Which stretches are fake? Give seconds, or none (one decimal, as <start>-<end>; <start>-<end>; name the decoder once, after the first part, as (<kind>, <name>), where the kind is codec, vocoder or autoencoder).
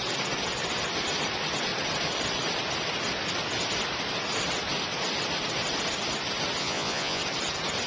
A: 6.6-7.2 (vocoder, Vocos)